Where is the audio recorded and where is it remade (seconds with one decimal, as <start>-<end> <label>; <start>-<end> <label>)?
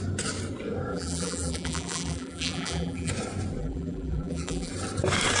0.0-0.9 recorded; 0.9-3.1 remade; 3.1-3.6 recorded; 3.6-4.7 remade; 4.7-5.4 recorded